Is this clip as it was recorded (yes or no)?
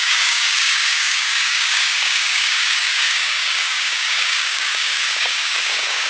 no